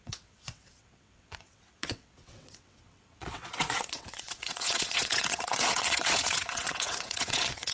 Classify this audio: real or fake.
fake